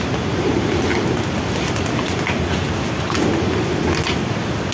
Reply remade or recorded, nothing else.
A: recorded